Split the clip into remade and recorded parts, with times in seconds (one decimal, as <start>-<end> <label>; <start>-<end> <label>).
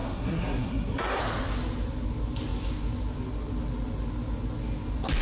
0.0-1.2 remade; 1.2-5.2 recorded